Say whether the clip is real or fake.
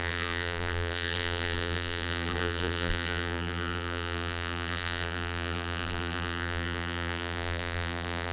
fake